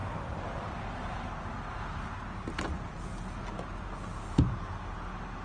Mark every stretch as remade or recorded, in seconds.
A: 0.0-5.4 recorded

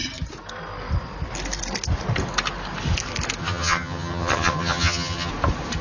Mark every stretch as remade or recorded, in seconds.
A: 0.0-3.4 recorded; 3.4-5.3 remade; 5.3-5.8 recorded

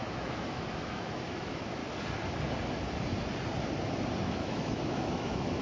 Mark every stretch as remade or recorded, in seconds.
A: 0.0-1.8 remade; 1.8-4.3 recorded; 4.3-5.6 remade

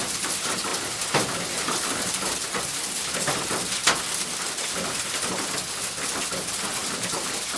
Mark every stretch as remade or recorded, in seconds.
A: 0.0-7.6 recorded

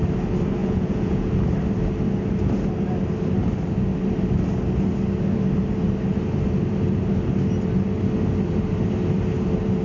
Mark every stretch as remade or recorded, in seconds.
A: 0.0-0.6 recorded; 0.6-1.3 remade; 1.3-9.8 recorded

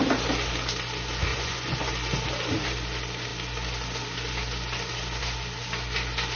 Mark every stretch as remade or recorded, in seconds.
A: 0.0-1.3 recorded; 1.3-1.9 remade; 1.9-6.4 recorded

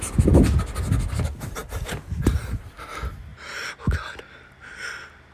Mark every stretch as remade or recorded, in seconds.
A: 0.0-5.3 recorded